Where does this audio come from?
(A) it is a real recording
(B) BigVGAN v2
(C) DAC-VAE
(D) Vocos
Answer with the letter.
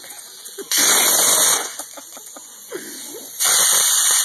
D